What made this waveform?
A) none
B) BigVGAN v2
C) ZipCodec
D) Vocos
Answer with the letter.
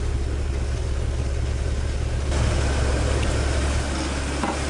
A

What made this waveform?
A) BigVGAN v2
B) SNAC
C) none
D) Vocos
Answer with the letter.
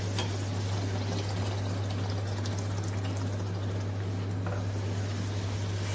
C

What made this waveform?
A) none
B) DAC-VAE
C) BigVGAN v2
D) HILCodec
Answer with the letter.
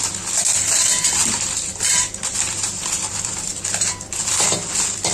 C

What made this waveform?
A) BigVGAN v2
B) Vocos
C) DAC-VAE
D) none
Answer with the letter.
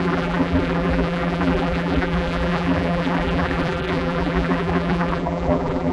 A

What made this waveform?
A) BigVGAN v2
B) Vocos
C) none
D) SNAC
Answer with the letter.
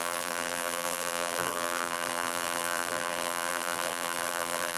A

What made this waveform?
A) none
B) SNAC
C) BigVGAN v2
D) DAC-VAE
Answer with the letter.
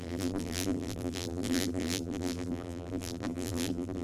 C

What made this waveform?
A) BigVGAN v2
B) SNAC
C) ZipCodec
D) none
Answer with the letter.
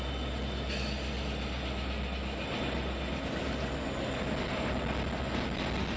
D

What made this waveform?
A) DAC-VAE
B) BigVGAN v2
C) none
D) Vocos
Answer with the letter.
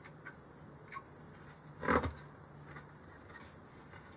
C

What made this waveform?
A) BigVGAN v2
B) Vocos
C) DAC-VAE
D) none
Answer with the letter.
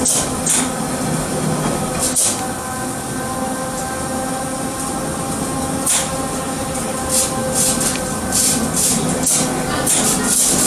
D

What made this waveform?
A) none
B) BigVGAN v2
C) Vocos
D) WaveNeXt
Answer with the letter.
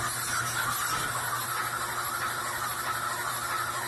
A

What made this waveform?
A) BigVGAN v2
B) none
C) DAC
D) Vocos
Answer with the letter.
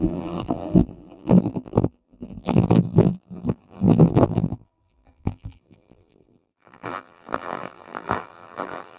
A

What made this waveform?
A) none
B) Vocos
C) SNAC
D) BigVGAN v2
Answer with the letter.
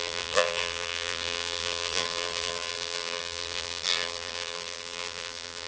D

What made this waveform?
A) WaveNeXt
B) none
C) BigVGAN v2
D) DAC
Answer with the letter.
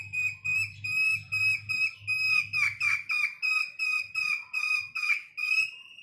B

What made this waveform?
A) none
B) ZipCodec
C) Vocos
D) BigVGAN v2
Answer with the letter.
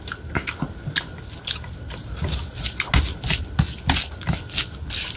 A